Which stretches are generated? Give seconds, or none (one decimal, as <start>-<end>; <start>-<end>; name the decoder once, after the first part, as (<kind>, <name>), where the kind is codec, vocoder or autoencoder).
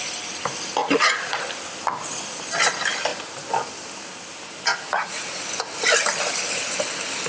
0.8-1.4 (vocoder, Vocos); 4.7-5.4